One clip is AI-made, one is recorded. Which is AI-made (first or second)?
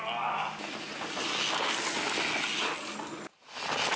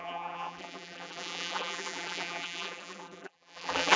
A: second